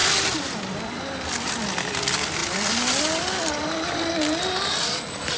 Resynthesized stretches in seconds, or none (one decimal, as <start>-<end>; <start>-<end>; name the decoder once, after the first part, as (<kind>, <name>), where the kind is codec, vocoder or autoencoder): none

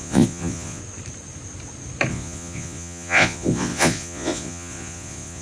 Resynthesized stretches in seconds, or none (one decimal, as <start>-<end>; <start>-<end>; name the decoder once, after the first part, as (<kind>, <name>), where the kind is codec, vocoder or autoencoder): 0.0-0.8 (vocoder, Vocos); 2.1-5.4

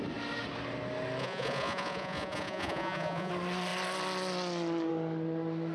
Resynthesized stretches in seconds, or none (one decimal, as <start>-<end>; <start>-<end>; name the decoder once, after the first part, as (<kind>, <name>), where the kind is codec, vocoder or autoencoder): 1.2-3.3 (vocoder, Vocos)

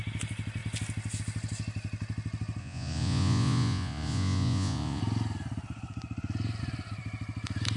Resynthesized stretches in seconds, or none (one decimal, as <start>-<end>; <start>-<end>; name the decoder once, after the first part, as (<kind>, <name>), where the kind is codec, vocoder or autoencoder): 2.6-5.0 (vocoder, Vocos)

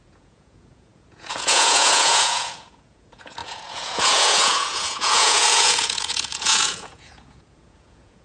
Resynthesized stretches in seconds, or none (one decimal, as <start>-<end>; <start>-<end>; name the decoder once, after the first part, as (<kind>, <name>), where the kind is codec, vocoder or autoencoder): 0.0-8.2 (vocoder, Vocos)